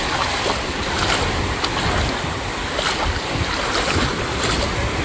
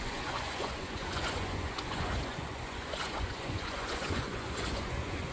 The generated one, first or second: second